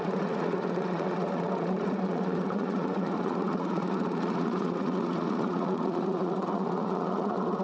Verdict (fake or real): fake